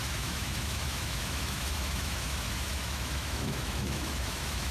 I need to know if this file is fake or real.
fake